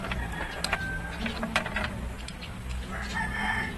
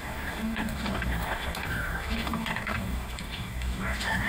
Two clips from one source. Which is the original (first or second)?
first